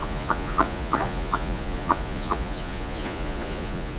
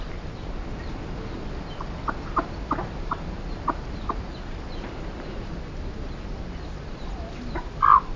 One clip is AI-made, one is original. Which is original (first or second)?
second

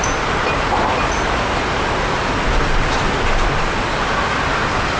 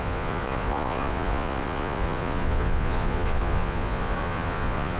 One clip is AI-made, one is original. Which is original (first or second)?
first